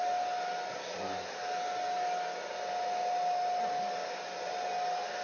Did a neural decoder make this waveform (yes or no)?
no